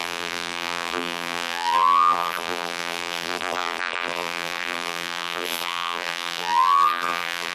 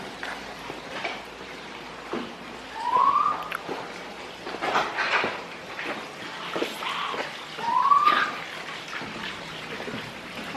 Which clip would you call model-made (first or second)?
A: first